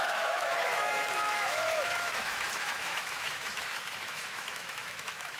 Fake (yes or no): yes